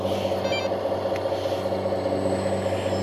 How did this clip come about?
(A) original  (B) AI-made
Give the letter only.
A